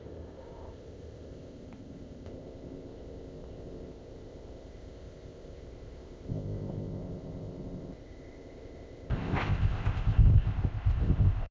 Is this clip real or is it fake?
fake